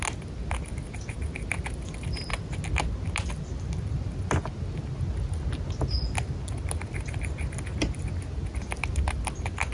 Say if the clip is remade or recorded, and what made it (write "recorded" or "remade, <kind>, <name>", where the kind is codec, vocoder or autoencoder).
recorded